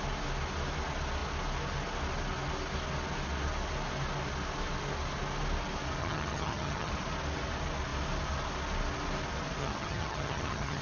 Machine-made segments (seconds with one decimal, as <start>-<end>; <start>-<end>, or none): 6.0-6.9; 9.6-10.8